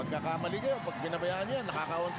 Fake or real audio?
real